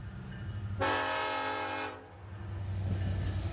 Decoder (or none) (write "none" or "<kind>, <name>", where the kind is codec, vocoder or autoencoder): none